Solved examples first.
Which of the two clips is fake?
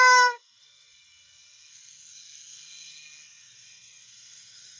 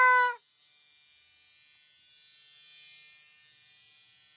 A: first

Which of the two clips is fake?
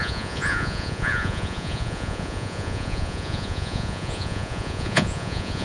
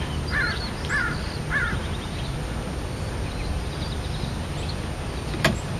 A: first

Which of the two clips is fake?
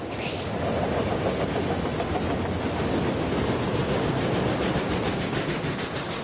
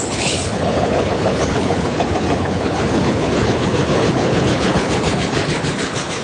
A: second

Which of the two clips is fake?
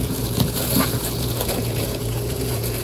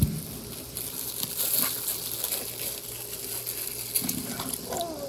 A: first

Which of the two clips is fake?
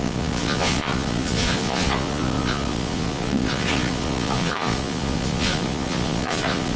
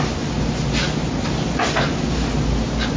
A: first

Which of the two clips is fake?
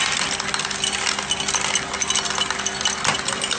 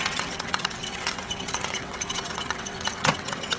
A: second